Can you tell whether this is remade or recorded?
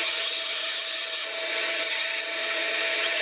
remade